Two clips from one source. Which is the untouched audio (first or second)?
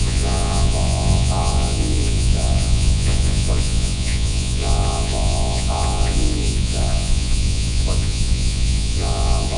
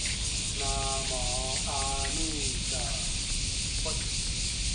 second